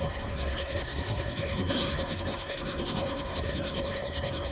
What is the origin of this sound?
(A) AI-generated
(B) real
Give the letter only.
A